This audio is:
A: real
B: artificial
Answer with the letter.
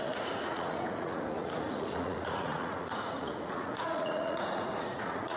B